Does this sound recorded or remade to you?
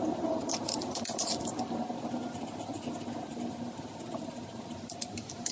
recorded